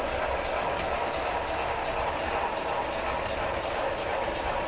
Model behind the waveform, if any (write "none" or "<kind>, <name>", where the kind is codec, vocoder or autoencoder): none